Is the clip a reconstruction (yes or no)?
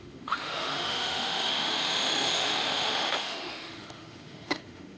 yes